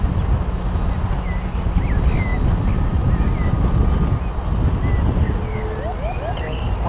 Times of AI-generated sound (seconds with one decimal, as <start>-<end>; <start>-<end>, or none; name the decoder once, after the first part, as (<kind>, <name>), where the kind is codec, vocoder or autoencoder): none